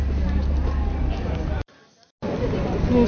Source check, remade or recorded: recorded